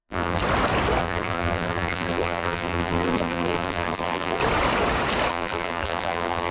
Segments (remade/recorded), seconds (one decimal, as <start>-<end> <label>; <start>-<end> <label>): 0.0-0.4 remade; 0.4-1.0 recorded; 1.0-4.4 remade; 4.4-5.3 recorded; 5.3-6.5 remade